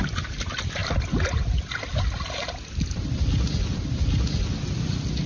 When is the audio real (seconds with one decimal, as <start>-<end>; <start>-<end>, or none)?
0.0-5.3